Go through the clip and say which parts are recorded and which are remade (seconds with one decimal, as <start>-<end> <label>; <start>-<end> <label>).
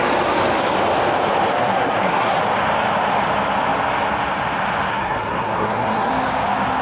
0.0-1.5 recorded; 1.5-2.4 remade; 2.4-4.9 recorded; 4.9-6.1 remade; 6.1-6.8 recorded